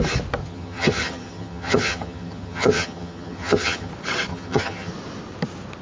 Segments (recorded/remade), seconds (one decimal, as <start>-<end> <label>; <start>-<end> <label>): 0.0-0.4 recorded; 0.4-3.9 remade; 3.9-4.3 recorded; 4.3-4.9 remade; 4.9-5.8 recorded